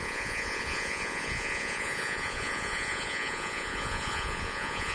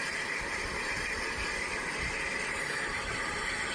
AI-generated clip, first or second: first